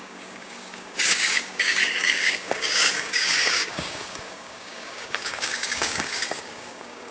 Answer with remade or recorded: remade